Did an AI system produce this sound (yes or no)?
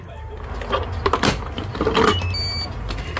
no